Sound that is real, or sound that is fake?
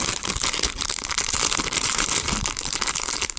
fake